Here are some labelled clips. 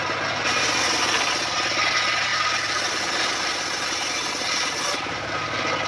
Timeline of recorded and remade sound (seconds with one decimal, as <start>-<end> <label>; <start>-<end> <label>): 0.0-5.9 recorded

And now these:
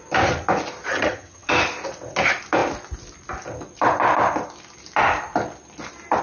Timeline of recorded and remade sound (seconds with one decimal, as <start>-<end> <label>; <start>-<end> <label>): 0.0-0.9 recorded; 0.9-1.5 remade; 1.5-6.2 recorded

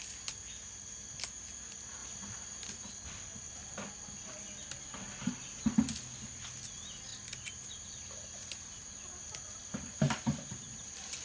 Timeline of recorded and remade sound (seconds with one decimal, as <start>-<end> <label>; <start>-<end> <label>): 0.0-11.2 recorded

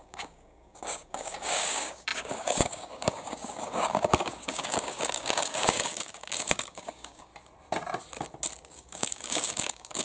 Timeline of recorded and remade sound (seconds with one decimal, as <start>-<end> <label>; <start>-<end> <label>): 0.0-7.3 remade; 7.3-8.7 recorded; 8.7-10.0 remade

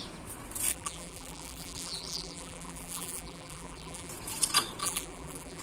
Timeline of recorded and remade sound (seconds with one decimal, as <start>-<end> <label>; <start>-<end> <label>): 0.0-0.7 recorded; 0.7-4.1 remade; 4.1-4.8 recorded; 4.8-5.6 remade